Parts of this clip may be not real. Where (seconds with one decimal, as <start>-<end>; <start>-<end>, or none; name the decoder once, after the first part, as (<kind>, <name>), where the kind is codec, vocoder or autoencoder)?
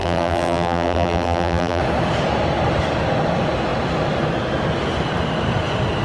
0.0-1.8 (vocoder, BigVGAN v2)